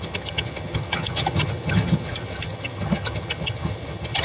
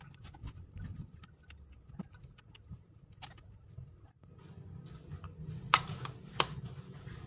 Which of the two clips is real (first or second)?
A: second